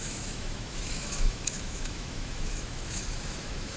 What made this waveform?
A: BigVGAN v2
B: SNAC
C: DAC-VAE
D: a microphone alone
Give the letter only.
C